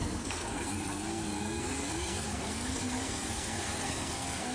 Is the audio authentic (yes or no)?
no